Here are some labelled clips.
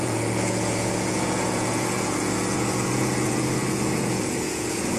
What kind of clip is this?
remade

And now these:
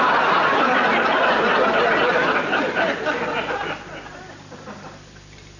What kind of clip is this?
recorded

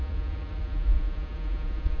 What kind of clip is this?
remade